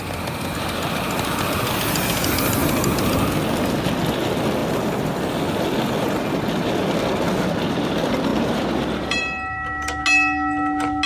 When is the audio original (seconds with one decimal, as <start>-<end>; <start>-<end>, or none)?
0.0-8.3; 10.0-11.1